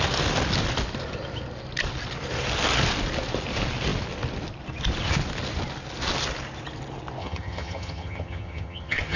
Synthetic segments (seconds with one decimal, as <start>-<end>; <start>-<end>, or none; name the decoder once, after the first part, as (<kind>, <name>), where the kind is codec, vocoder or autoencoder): 7.2-9.2 (vocoder, HiFi-GAN)